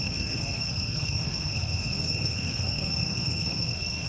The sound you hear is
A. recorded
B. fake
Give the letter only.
B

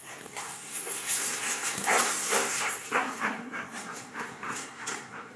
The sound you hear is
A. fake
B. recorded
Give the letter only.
A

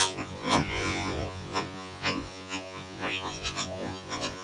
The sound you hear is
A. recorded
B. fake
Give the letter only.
B